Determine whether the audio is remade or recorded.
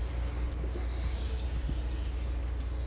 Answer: recorded